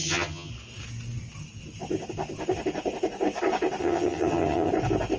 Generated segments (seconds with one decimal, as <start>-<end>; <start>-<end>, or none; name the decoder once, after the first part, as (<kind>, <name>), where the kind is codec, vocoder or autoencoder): 0.0-0.5 (vocoder, HiFi-GAN); 3.8-4.7